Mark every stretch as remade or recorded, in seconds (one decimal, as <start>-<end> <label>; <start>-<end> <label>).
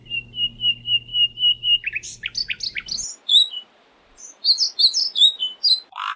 0.0-6.2 recorded